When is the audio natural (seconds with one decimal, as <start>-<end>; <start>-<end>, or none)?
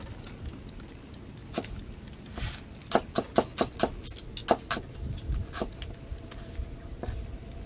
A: 0.0-7.7